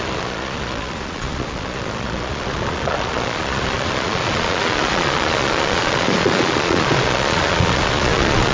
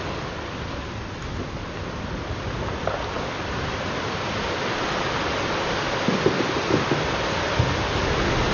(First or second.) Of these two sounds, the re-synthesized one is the first